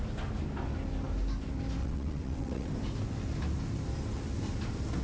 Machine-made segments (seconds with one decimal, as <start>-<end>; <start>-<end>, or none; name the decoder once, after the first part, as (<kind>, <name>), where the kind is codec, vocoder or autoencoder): 1.8-2.7 (vocoder, WaveNeXt)